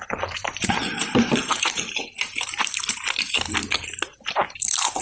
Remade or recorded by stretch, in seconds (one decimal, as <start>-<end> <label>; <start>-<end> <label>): 0.0-0.4 recorded; 0.4-3.4 remade; 3.4-4.1 recorded; 4.1-5.0 remade